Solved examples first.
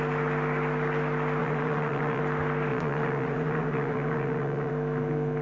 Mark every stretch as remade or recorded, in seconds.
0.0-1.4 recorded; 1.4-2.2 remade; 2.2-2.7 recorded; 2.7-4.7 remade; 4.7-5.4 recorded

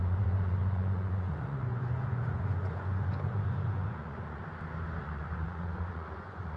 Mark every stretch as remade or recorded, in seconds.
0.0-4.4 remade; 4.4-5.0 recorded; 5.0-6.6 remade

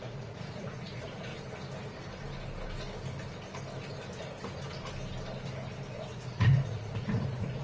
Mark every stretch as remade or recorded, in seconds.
0.0-1.3 remade; 1.3-5.9 recorded; 5.9-7.6 remade

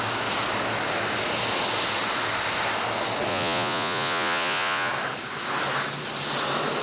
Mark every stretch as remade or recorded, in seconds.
0.0-3.3 recorded; 3.3-4.9 remade; 4.9-6.8 recorded

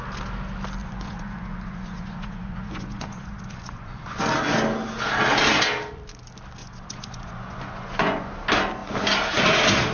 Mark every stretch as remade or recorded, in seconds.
0.0-0.8 recorded; 0.8-4.2 remade; 4.2-6.6 recorded; 6.6-8.3 remade; 8.3-9.9 recorded

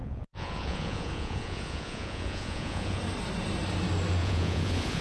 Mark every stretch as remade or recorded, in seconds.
0.0-3.0 remade; 3.0-4.2 recorded; 4.2-5.0 remade